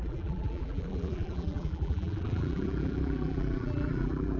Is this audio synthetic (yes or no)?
yes